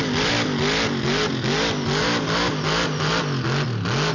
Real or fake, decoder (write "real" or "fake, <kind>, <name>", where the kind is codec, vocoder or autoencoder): real